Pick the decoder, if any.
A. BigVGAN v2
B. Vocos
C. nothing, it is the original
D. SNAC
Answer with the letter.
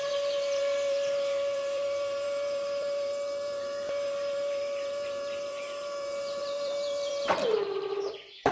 A